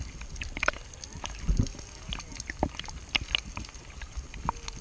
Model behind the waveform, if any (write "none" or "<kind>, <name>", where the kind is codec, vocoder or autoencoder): none